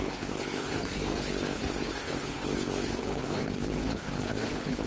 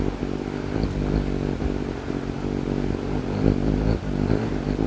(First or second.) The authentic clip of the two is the second